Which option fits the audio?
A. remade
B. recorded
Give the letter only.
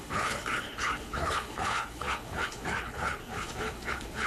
A